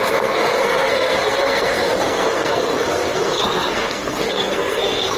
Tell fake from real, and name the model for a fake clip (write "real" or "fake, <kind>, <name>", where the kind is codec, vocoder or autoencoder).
fake, codec, SNAC